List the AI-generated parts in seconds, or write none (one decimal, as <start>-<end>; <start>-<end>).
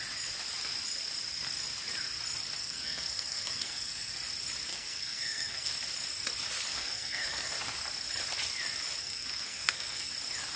2.6-4.1; 4.7-5.7; 6.7-7.5; 9.0-10.1